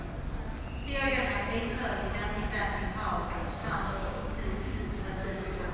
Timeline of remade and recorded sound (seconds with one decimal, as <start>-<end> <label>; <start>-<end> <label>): 0.0-3.6 recorded; 3.6-5.7 remade